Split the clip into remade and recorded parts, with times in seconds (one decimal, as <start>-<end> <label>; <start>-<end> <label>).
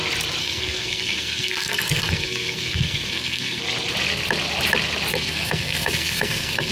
0.0-0.4 recorded; 0.4-3.6 remade; 3.6-5.1 recorded; 5.1-6.7 remade